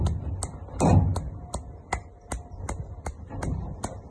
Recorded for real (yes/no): yes